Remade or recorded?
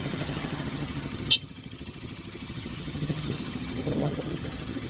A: remade